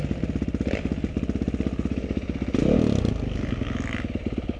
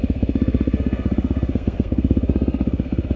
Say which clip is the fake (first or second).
second